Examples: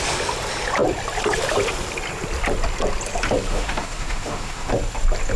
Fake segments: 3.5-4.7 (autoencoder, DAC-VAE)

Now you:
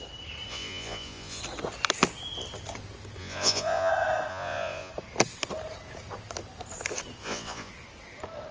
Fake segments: 0.5-1.4 (vocoder, Vocos); 3.2-3.9; 4.3-4.9; 7.2-7.7

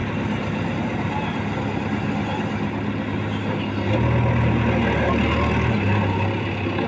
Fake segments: none